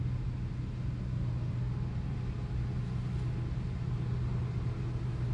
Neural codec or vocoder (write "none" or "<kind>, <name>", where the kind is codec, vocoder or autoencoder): none